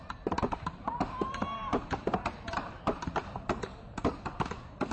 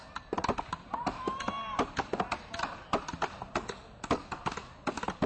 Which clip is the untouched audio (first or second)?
second